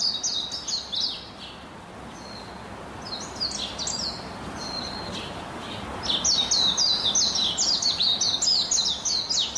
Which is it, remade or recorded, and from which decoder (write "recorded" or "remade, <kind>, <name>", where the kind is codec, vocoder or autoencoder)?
recorded